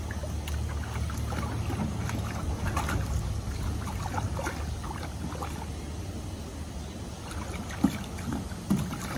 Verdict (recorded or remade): recorded